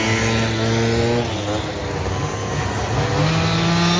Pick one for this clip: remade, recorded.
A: recorded